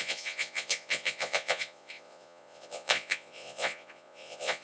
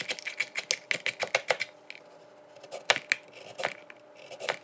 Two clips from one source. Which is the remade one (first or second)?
first